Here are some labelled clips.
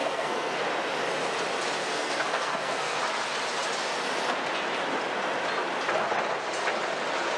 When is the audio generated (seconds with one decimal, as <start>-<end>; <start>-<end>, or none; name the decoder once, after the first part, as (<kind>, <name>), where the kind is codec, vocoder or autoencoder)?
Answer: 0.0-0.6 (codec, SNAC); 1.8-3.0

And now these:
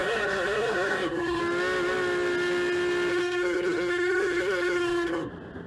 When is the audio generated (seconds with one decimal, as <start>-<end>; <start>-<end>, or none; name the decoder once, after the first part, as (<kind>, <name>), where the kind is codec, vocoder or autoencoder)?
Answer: 0.0-1.4 (codec, SNAC); 3.1-5.3

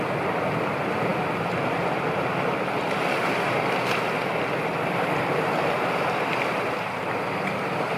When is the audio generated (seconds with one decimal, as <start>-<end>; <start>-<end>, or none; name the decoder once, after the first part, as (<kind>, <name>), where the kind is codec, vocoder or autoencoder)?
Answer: none

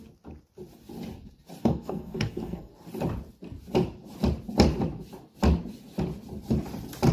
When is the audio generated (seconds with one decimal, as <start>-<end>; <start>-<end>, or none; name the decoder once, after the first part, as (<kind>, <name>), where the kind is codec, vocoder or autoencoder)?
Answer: 1.6-2.7 (codec, SNAC)

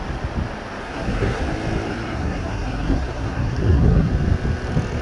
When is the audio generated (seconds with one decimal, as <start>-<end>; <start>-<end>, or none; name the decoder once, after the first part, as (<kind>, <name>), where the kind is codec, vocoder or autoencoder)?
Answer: 0.8-1.4 (codec, SNAC); 1.9-4.1

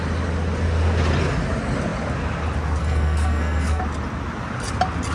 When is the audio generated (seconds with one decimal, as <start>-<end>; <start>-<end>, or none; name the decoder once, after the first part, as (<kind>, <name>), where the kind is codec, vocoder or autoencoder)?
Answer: 2.8-3.8 (codec, SNAC)

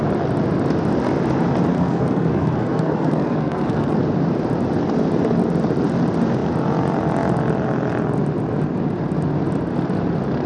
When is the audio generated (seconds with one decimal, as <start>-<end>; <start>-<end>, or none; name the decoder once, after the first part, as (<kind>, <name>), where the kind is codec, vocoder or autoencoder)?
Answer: 1.7-4.0 (codec, SNAC)

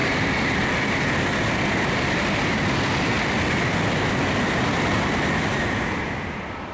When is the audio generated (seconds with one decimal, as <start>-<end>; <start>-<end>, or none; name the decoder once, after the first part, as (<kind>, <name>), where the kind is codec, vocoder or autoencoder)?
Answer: none